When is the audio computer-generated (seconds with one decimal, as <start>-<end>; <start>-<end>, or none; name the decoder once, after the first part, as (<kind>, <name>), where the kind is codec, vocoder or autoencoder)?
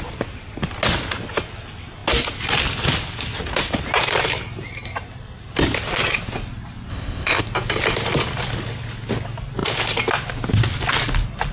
6.9-7.4 (codec, ZipCodec)